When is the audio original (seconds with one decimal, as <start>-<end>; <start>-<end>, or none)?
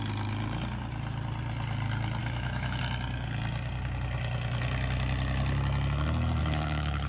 0.0-2.2; 2.8-6.4